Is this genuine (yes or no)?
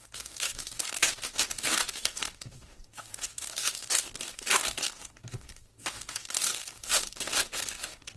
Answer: no